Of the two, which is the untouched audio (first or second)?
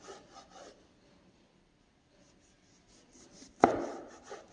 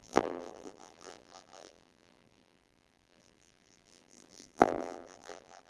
first